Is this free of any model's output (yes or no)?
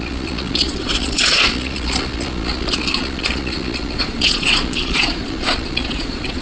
no